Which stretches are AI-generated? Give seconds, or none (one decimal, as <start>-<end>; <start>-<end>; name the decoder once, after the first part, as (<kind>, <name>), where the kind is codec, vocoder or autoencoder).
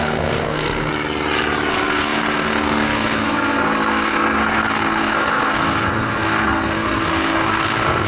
0.0-0.9 (codec, SNAC); 1.7-8.1